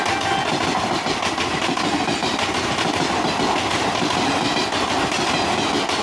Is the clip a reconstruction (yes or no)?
no